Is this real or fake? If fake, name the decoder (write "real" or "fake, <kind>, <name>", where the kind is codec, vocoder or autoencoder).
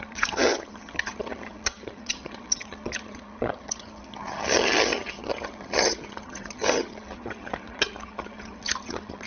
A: fake, vocoder, HiFi-GAN